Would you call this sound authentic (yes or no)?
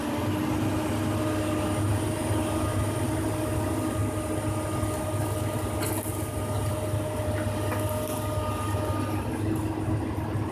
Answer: yes